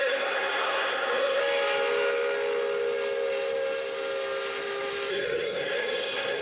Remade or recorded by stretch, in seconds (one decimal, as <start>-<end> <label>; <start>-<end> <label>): 0.0-1.4 remade; 1.4-5.1 recorded; 5.1-6.4 remade